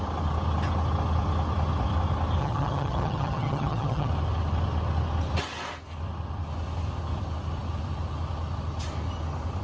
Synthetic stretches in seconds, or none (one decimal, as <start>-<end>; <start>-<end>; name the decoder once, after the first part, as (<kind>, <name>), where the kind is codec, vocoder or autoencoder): 2.4-4.1 (vocoder, HiFi-GAN)